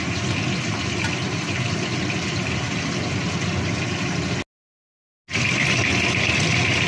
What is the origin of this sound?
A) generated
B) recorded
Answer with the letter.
B